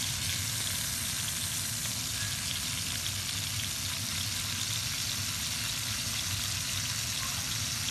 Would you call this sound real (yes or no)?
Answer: yes